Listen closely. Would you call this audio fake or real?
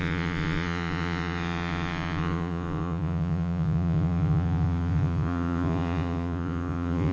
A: fake